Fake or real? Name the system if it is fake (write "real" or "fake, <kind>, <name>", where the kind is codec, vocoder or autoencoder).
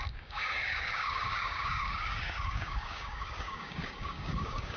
fake, codec, DAC